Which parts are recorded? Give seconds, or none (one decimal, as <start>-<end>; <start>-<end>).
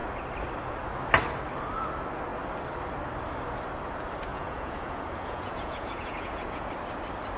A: 0.0-4.3; 6.7-7.4